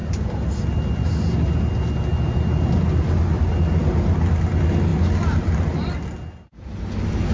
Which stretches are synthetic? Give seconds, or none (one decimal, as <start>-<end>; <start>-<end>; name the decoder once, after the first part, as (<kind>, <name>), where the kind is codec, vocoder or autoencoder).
none